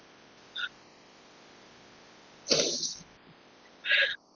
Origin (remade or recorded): recorded